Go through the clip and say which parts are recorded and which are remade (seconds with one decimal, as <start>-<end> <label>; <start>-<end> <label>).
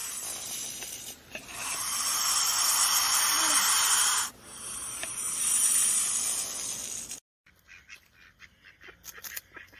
0.0-1.4 remade; 1.4-2.5 recorded; 2.5-6.1 remade; 6.1-9.8 recorded